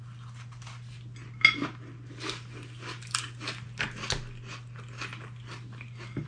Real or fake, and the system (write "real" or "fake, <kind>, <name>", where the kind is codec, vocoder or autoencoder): real